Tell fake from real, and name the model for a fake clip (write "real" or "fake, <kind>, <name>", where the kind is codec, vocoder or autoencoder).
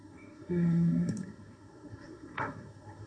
fake, codec, SNAC